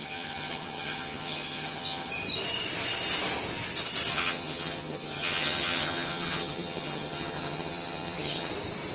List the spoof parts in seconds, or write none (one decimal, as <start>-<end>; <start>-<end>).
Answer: 0.0-2.1; 4.1-8.5